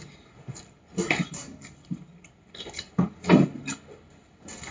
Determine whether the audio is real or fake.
real